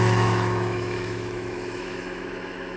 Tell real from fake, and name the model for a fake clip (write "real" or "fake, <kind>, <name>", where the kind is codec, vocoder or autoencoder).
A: fake, autoencoder, DAC-VAE